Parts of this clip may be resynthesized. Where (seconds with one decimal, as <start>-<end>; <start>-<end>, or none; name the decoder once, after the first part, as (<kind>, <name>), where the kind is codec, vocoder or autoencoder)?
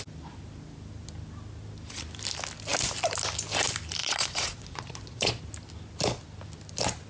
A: 4.0-5.4 (vocoder, Vocos)